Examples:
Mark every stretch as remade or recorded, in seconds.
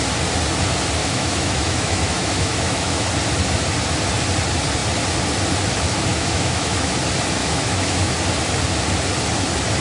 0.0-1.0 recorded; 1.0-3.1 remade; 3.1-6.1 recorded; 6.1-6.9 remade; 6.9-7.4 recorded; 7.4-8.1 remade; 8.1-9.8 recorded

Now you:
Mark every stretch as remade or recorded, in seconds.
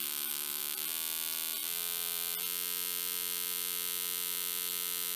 0.0-0.6 remade; 0.6-5.2 recorded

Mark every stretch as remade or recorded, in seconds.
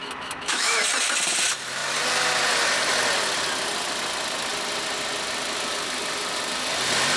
0.0-0.8 remade; 0.8-7.2 recorded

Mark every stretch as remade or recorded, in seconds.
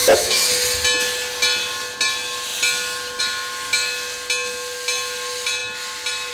0.0-0.5 remade; 0.5-6.3 recorded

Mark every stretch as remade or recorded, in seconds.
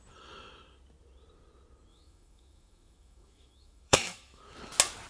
0.0-1.9 recorded; 1.9-4.4 remade; 4.4-5.1 recorded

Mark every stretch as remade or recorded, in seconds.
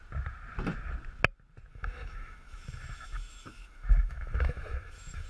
0.0-1.7 recorded; 1.7-5.3 remade